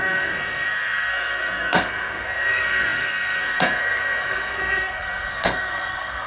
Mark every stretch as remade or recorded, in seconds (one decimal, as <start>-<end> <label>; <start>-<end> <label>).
0.0-6.3 remade